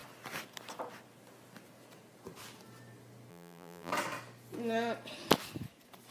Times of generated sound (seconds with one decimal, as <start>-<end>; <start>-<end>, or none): 3.3-3.9